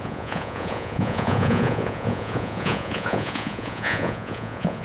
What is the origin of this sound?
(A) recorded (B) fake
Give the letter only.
B